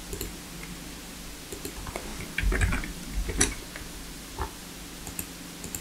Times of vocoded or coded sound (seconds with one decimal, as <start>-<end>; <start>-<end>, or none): 0.0-0.5; 2.1-3.6